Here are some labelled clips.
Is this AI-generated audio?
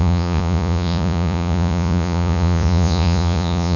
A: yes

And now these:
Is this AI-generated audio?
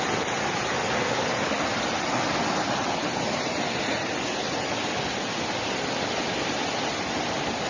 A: no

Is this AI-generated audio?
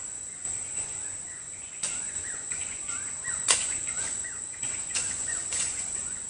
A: yes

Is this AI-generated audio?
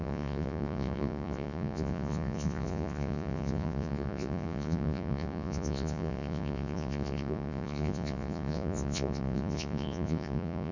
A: yes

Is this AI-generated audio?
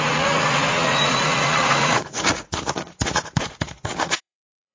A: yes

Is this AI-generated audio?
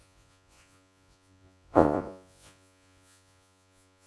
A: yes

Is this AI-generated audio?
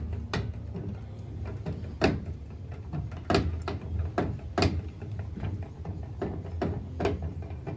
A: no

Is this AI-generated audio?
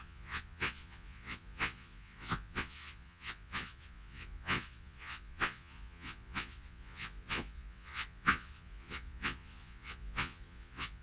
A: yes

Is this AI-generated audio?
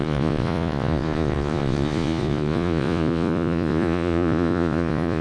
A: yes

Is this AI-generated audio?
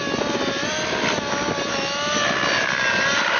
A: no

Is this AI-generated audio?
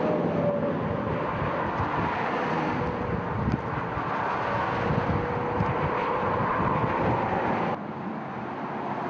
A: no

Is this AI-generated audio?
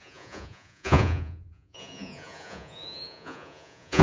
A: yes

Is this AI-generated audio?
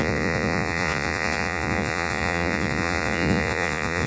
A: yes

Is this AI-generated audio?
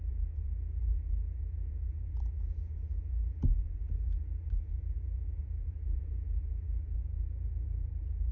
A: yes